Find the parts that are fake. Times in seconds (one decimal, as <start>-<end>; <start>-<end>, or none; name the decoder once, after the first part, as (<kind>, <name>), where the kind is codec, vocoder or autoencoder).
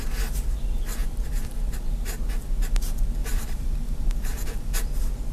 1.0-2.2 (vocoder, BigVGAN v2); 3.2-5.3